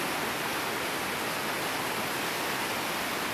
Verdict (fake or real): real